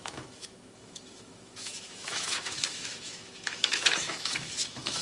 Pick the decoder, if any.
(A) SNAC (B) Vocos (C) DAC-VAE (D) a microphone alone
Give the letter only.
C